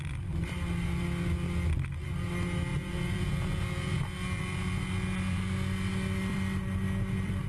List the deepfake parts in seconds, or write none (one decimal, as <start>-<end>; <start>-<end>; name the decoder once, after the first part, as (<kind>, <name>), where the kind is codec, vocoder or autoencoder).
2.7-4.0 (vocoder, Vocos)